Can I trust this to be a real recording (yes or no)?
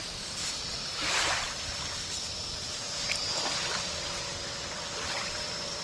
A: yes